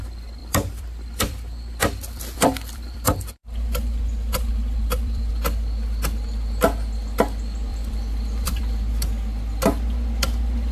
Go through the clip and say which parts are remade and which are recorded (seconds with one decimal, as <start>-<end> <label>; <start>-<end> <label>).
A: 0.0-0.4 recorded; 0.4-5.3 remade; 5.3-7.7 recorded; 7.7-8.6 remade; 8.6-10.7 recorded

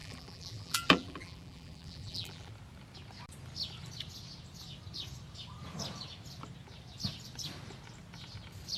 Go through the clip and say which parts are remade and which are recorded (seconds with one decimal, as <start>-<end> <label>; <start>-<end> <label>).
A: 0.0-2.5 remade; 2.5-8.8 recorded

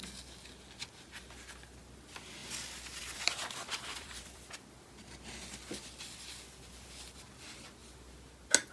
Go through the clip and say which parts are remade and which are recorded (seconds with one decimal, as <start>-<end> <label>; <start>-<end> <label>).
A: 0.0-2.4 recorded; 2.4-4.5 remade; 4.5-8.7 recorded

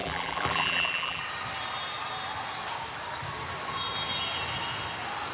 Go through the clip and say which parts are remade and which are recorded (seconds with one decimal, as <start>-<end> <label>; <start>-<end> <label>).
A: 0.0-1.2 remade; 1.2-5.3 recorded

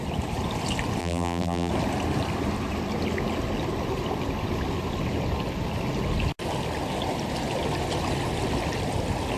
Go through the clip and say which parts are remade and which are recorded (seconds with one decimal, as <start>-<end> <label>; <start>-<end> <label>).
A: 0.0-1.0 recorded; 1.0-1.7 remade; 1.7-9.4 recorded